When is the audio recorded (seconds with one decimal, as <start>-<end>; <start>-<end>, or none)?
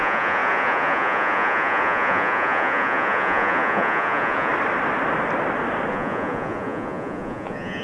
4.5-5.9